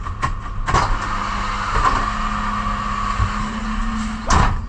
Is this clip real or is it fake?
real